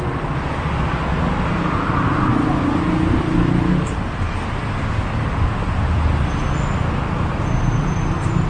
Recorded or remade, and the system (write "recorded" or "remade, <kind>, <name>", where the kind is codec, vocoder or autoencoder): recorded